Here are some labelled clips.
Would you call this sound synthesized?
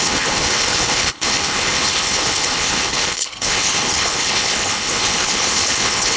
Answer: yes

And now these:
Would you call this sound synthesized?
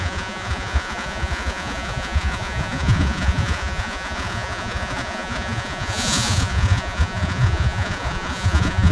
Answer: yes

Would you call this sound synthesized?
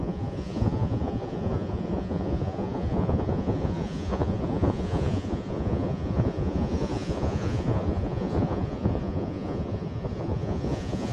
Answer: yes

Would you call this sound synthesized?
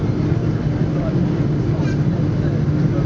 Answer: no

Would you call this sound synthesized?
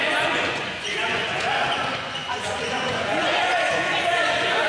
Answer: yes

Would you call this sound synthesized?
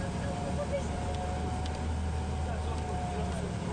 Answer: no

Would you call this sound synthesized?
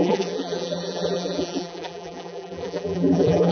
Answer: yes